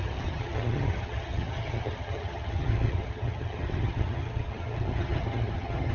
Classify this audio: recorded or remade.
remade